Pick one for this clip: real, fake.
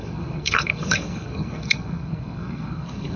fake